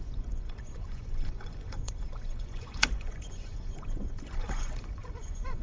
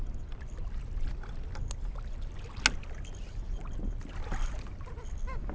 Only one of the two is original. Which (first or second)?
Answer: second